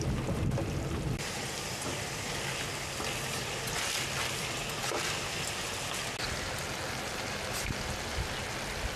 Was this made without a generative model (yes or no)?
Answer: yes